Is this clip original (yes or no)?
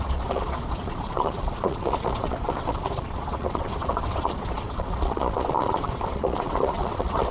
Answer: no